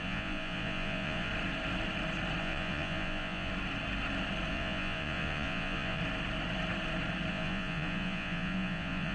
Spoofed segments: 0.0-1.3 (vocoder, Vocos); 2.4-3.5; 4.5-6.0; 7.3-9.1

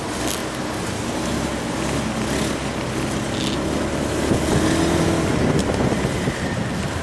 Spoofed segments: none